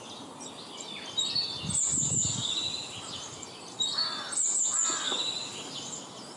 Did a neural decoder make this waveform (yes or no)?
no